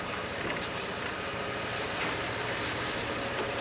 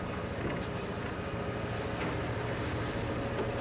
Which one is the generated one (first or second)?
first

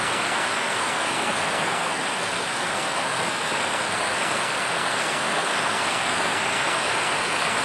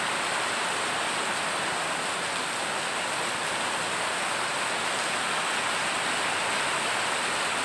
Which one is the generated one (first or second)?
first